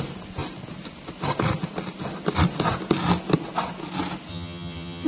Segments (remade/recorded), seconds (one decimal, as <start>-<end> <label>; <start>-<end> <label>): 0.0-4.3 recorded; 4.3-5.1 remade